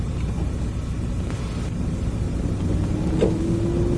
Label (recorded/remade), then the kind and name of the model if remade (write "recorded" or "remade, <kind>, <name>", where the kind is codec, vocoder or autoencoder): recorded